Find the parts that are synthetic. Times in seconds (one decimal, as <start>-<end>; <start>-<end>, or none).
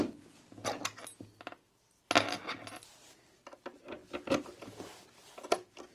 none